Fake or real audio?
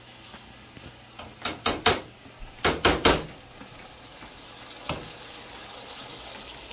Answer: real